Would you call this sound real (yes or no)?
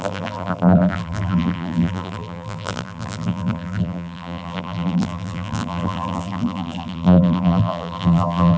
no